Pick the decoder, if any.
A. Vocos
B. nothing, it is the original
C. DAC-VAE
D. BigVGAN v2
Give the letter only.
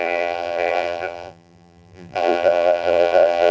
D